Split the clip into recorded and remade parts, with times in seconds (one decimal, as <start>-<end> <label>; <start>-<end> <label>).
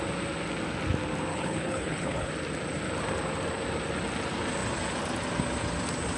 0.0-1.3 recorded; 1.3-2.3 remade; 2.3-6.2 recorded